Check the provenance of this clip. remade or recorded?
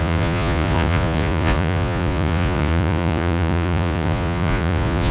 remade